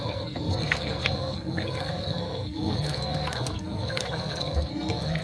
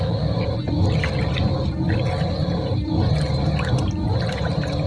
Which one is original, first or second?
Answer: second